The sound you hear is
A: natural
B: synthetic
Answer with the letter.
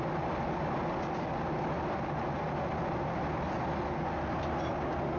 A